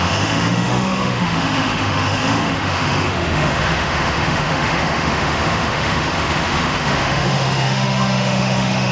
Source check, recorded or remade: remade